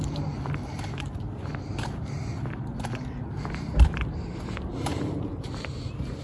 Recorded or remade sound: remade